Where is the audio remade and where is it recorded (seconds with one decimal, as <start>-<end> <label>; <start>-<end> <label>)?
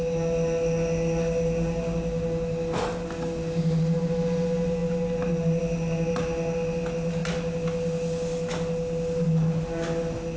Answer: 0.0-10.4 recorded